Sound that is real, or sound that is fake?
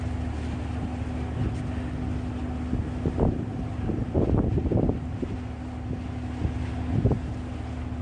real